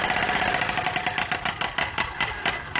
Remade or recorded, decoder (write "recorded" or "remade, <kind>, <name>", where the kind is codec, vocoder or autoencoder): recorded